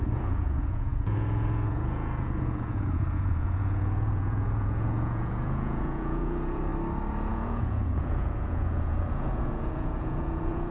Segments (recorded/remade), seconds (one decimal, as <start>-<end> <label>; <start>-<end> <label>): 0.0-6.7 remade; 6.7-7.3 recorded; 7.3-10.7 remade